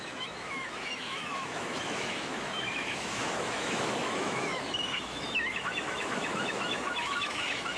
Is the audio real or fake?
fake